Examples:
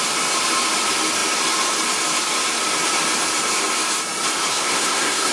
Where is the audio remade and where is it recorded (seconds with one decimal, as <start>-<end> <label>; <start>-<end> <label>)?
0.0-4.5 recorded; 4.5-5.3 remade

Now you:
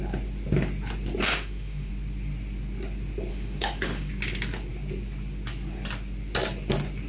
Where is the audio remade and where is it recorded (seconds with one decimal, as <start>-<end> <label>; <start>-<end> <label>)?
0.0-1.3 recorded; 1.3-1.9 remade; 1.9-3.3 recorded; 3.3-4.1 remade; 4.1-7.1 recorded

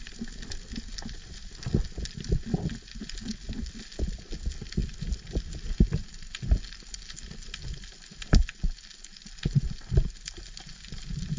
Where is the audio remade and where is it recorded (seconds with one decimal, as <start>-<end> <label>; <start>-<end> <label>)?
0.0-11.4 recorded